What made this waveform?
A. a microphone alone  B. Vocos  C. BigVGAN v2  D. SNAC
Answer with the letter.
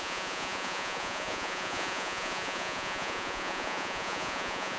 B